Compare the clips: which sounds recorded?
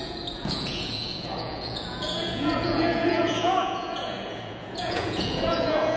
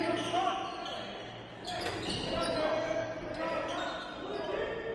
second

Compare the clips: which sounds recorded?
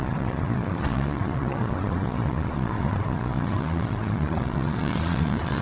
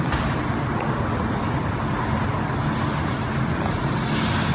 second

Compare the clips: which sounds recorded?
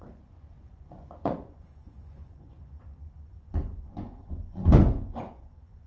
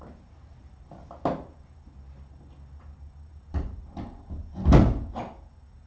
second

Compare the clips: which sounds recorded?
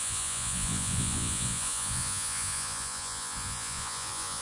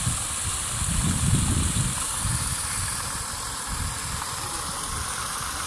second